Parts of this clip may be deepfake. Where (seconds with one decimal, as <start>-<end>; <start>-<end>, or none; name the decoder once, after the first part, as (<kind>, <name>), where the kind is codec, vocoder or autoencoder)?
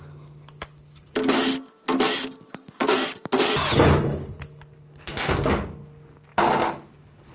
none